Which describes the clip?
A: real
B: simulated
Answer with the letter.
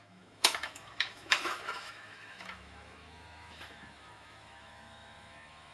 B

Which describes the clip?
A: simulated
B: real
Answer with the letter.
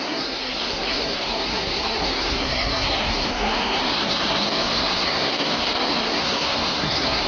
A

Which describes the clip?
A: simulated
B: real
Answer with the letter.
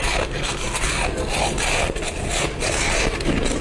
B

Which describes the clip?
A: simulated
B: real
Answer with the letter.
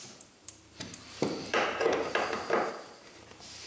A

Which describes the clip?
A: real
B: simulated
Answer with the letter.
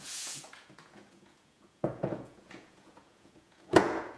B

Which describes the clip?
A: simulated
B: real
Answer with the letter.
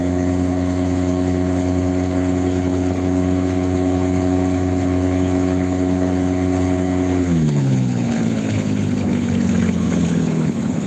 A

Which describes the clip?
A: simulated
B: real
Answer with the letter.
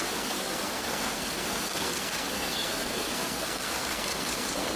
A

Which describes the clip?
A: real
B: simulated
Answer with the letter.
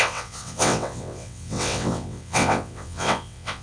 B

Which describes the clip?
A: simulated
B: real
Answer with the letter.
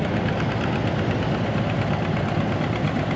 B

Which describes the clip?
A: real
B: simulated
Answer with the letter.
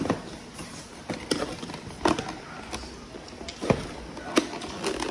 A